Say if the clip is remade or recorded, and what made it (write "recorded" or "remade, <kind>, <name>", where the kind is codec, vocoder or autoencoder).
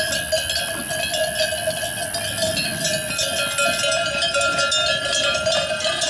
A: recorded